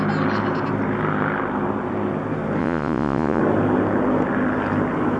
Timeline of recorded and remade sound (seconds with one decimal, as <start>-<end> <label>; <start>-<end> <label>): 0.0-2.6 recorded; 2.6-3.4 remade; 3.4-5.2 recorded